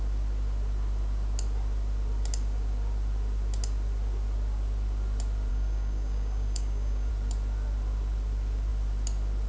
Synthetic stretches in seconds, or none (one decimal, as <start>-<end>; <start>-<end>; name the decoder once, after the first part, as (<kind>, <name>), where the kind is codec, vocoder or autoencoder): 5.5-7.1 (codec, DAC)